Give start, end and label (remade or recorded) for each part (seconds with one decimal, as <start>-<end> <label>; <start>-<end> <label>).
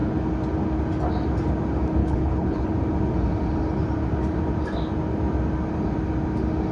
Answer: 0.0-2.0 recorded; 2.0-2.7 remade; 2.7-6.7 recorded